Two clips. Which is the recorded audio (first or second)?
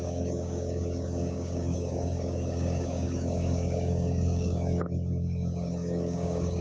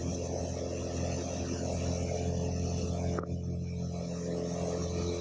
second